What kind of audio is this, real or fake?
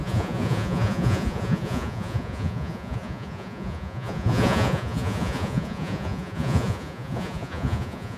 fake